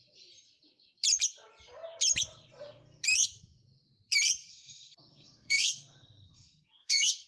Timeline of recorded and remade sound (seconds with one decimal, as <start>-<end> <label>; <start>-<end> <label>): 0.0-4.5 recorded; 4.5-7.3 remade